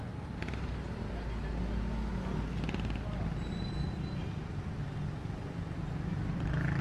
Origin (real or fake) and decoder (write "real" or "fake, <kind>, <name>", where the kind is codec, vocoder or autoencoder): real